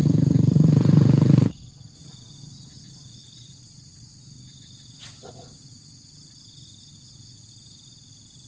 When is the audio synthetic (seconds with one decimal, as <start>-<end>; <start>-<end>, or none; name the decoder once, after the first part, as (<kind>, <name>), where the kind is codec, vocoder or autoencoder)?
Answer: 0.0-4.0 (vocoder, Vocos)